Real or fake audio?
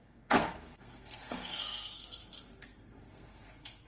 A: fake